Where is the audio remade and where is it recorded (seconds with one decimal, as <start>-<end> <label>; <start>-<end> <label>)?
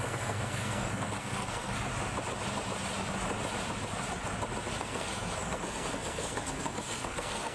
0.0-1.9 remade; 1.9-4.8 recorded; 4.8-7.5 remade